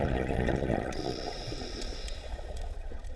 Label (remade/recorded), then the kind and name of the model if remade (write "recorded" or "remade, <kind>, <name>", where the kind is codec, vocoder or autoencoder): remade, vocoder, Vocos